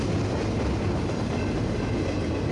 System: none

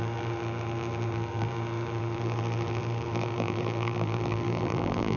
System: vocoder, BigVGAN v2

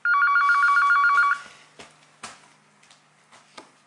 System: none